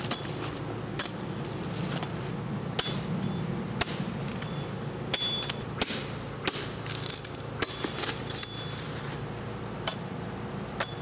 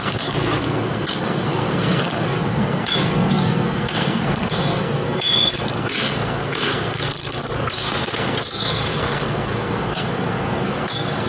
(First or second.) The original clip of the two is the first